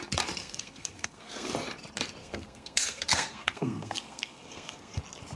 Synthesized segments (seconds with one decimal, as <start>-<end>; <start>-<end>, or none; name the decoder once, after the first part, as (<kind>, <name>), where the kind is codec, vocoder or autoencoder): 0.4-1.5 (codec, SNAC); 2.2-5.0